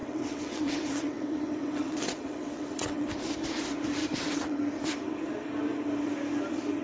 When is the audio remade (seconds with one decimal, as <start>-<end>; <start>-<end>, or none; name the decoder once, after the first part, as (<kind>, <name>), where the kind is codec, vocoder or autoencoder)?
0.0-3.1 (vocoder, WaveNeXt); 4.0-4.6